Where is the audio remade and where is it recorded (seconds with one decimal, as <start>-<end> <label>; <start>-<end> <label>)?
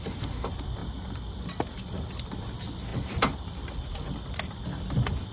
0.0-5.3 remade